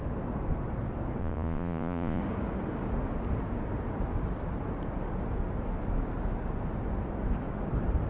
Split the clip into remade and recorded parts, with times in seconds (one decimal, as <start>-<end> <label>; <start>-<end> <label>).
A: 0.0-1.2 recorded; 1.2-2.2 remade; 2.2-8.1 recorded